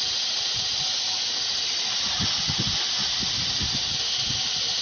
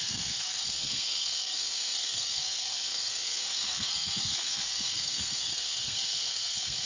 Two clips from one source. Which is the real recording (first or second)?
first